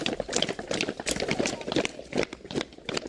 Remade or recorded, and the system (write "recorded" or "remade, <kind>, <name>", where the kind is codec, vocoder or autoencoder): recorded